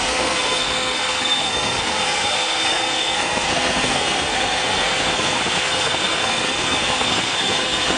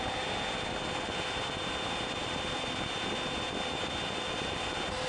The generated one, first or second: first